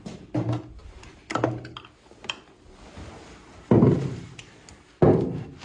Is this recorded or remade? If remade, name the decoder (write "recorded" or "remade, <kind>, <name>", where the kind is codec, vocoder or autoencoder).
recorded